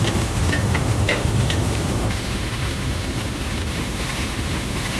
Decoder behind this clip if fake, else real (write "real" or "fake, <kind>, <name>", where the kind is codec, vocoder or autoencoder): fake, autoencoder, DAC-VAE